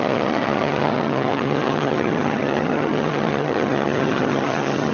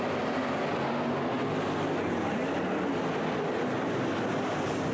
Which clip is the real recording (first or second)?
second